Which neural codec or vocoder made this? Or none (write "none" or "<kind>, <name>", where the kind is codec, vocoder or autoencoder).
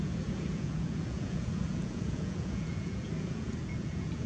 vocoder, Vocos